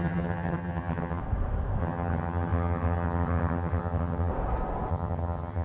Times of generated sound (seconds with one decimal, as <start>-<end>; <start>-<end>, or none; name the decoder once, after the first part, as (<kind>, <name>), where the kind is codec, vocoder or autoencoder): 0.0-1.2 (vocoder, HiFi-GAN); 1.8-4.3; 4.9-5.6